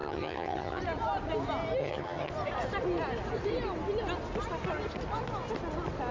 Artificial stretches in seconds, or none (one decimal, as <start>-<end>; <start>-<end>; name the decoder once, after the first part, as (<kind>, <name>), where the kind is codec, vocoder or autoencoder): 0.0-0.8 (vocoder, HiFi-GAN); 1.8-2.3